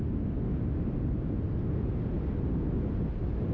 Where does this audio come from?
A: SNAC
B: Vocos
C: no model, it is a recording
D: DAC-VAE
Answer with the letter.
C